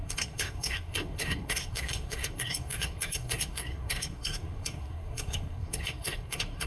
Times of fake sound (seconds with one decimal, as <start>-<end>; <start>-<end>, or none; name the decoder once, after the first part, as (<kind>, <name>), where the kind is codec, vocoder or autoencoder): 0.0-6.7 (codec, SNAC)